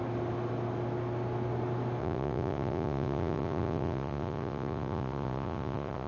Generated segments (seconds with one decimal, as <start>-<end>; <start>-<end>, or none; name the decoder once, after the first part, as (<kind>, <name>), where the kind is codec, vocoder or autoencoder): 2.0-6.1 (vocoder, Vocos)